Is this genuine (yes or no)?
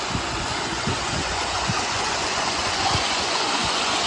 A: no